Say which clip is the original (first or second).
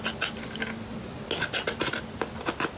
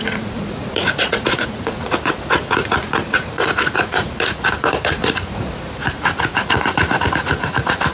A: first